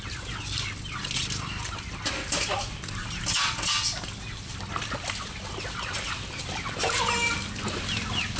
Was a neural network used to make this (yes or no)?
no